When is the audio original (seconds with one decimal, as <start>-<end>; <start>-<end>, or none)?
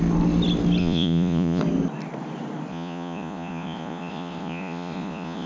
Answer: 0.0-0.8; 1.6-2.7